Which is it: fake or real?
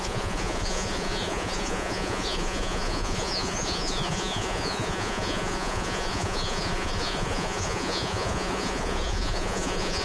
fake